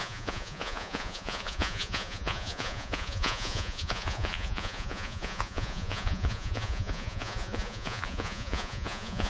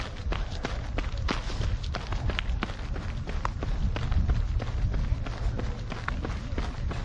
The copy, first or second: first